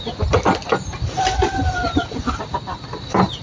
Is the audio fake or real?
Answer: real